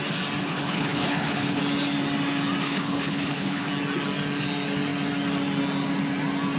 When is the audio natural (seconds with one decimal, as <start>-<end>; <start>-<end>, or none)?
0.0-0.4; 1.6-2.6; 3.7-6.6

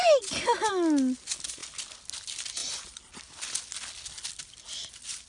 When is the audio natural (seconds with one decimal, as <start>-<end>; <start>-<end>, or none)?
0.0-5.3

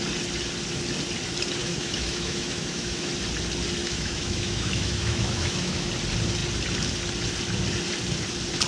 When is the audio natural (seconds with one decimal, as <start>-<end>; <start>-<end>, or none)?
0.0-1.6; 3.1-3.8; 5.9-8.7

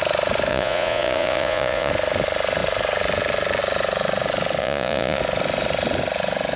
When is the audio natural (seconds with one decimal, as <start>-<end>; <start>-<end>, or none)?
0.0-0.5; 1.9-4.6; 5.2-6.6

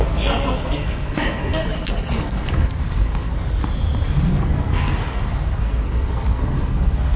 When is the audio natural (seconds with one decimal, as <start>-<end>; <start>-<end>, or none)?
3.6-4.3

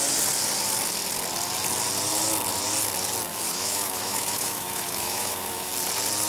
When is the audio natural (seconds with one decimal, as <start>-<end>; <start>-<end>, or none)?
0.0-3.3; 5.7-6.3

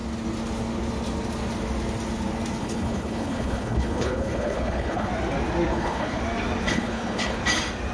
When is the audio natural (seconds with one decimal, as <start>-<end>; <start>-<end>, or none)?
0.0-2.6; 5.1-5.7; 6.2-6.7; 7.4-7.9